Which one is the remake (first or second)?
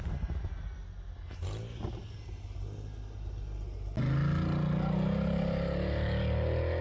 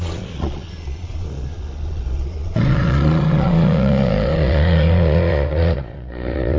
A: second